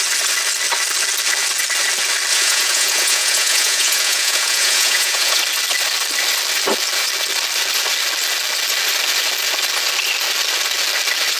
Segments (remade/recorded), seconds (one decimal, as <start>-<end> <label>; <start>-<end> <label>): 0.0-2.3 recorded; 2.3-5.4 remade; 5.4-11.4 recorded